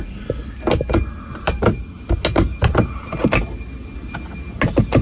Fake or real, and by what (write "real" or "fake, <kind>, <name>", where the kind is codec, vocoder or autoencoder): real